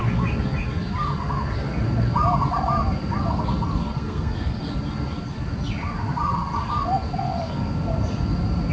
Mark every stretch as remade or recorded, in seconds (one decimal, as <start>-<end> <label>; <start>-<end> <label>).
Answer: 0.0-3.9 recorded; 3.9-4.7 remade; 4.7-8.7 recorded